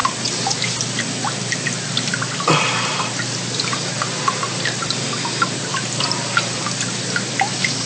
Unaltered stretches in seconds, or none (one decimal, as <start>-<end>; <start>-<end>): 0.0-7.9